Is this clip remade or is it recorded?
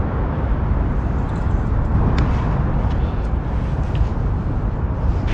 recorded